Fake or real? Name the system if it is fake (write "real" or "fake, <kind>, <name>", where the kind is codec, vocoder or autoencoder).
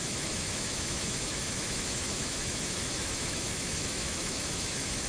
fake, autoencoder, DAC-VAE